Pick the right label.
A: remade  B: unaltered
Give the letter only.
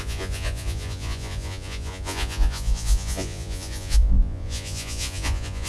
A